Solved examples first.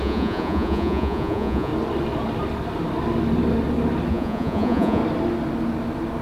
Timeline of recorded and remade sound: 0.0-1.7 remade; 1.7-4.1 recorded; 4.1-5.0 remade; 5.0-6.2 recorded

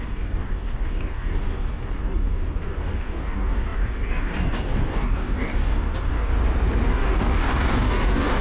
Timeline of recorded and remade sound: 0.0-6.3 remade; 6.3-6.9 recorded; 6.9-8.4 remade

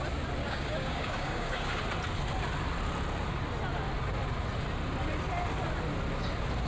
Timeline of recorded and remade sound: 0.0-0.4 recorded; 0.4-1.8 remade; 1.8-6.7 recorded

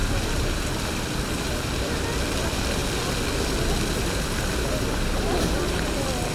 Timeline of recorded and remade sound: 0.0-2.0 remade; 2.0-6.3 recorded

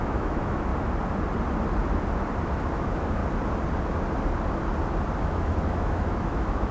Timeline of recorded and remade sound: 0.0-0.7 remade; 0.7-2.8 recorded; 2.8-3.2 remade; 3.2-5.2 recorded; 5.2-6.7 remade